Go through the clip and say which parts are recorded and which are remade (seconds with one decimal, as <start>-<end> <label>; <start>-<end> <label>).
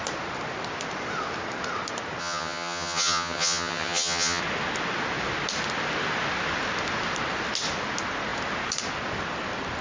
0.0-2.2 recorded; 2.2-4.4 remade; 4.4-9.8 recorded